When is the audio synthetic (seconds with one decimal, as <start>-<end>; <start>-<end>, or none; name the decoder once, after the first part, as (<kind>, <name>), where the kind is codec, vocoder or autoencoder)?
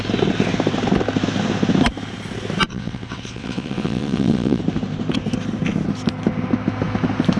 2.7-4.6 (vocoder, WaveNeXt)